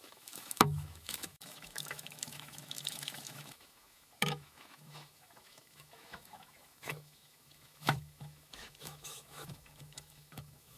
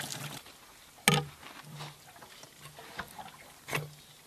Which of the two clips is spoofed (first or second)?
first